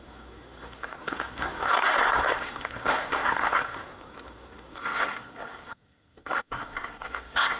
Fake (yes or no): yes